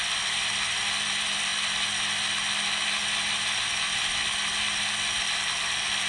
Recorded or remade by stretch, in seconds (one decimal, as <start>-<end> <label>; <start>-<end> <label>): 0.0-6.1 recorded